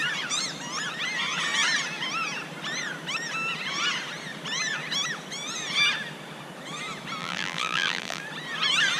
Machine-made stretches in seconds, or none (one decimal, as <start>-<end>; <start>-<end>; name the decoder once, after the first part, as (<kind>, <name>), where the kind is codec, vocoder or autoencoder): 7.2-8.2 (vocoder, BigVGAN v2)